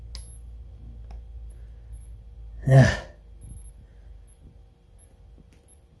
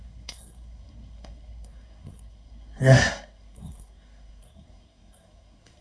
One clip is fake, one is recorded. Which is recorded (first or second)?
first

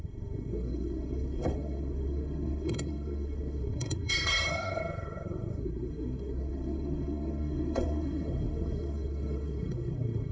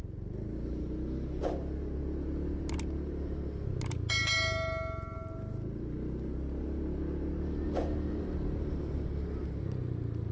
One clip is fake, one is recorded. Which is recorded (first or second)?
second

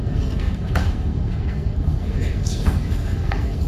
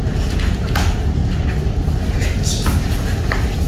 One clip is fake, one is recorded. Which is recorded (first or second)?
second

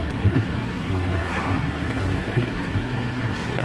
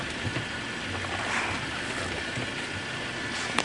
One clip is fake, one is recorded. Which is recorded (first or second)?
second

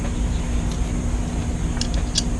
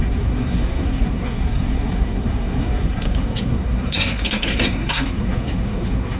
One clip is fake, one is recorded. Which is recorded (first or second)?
first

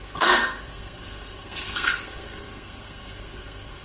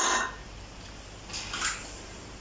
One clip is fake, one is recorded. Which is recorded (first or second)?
second